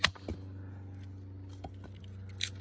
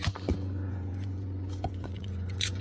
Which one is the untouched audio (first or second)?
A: first